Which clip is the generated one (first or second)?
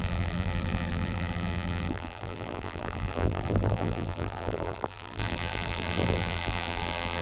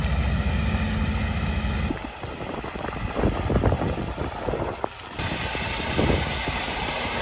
first